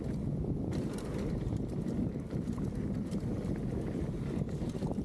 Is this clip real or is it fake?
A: real